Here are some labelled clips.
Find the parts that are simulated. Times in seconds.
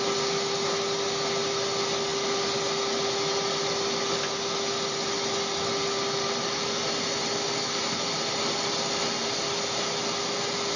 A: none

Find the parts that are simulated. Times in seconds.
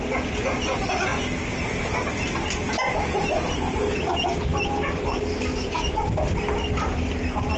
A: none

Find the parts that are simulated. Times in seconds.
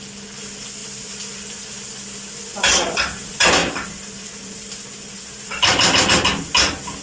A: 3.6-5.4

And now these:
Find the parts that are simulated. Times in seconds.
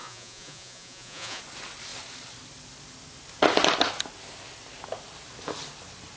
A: 0.0-1.4